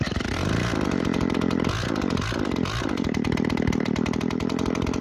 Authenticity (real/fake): real